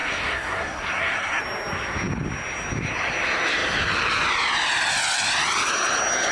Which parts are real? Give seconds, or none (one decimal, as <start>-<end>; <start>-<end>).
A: 1.4-6.3